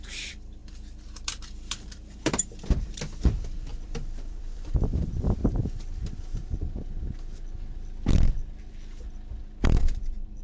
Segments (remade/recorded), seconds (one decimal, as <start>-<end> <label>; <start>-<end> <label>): 0.0-5.4 remade; 5.4-8.7 recorded; 8.7-10.4 remade